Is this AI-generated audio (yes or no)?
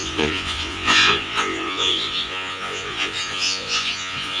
yes